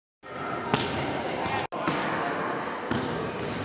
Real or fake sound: real